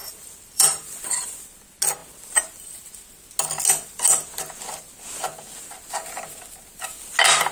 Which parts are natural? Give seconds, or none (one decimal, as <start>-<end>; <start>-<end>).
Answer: 1.4-7.5

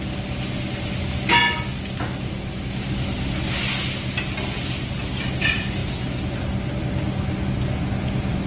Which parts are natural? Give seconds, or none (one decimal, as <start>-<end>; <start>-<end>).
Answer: 0.0-8.5

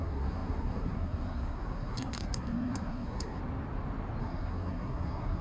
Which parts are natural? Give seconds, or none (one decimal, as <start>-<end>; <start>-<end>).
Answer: 3.4-4.2

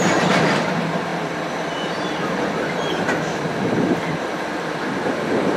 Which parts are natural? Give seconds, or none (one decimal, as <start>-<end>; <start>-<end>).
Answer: 3.5-5.6

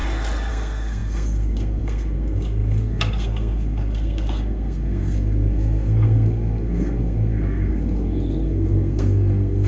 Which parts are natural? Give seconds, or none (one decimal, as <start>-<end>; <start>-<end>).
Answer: 0.0-0.5

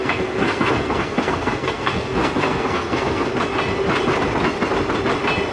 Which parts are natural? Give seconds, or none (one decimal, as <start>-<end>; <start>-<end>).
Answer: 3.3-5.5

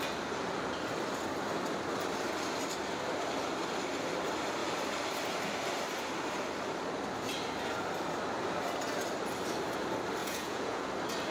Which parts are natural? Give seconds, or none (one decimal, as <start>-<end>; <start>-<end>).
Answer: 0.0-10.2; 10.9-11.3